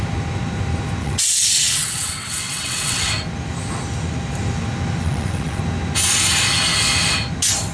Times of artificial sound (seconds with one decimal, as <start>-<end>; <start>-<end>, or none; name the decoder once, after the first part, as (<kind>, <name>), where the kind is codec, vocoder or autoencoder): 1.0-3.1 (vocoder, WaveNeXt); 5.0-5.6